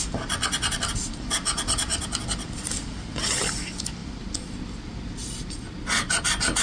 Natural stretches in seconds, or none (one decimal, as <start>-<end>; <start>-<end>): 0.0-6.6